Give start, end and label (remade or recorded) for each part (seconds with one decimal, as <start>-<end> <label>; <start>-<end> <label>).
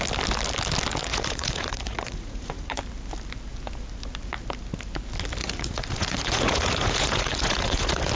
0.0-1.0 recorded; 1.0-2.8 remade; 2.8-5.4 recorded; 5.4-8.1 remade